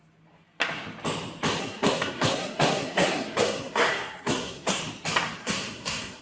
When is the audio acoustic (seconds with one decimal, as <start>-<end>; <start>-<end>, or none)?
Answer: 0.0-1.6; 4.8-5.4